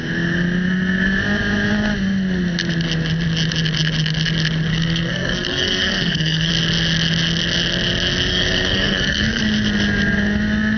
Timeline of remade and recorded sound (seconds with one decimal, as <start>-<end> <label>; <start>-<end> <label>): 0.0-4.7 recorded; 4.7-6.5 remade; 6.5-8.3 recorded; 8.3-9.4 remade; 9.4-10.8 recorded